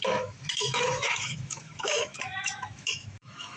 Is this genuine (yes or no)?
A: no